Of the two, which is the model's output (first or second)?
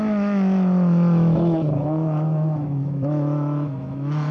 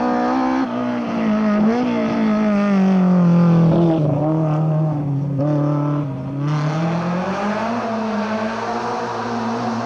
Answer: first